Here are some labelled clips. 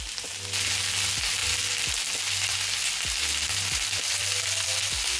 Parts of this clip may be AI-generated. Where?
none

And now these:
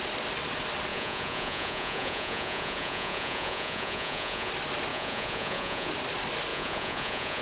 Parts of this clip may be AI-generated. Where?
0.9-4.5; 4.9-5.9; 6.5-7.4

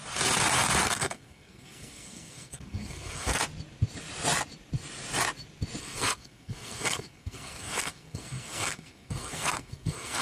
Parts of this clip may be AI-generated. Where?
0.8-3.4; 5.8-10.2

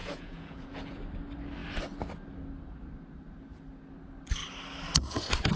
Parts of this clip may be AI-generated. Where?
0.0-1.0

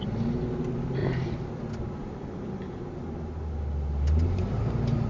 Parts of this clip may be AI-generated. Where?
1.0-1.6; 2.0-2.7

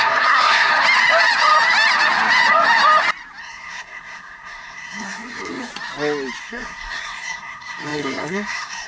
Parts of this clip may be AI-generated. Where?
0.0-0.7; 3.4-5.7; 6.4-8.9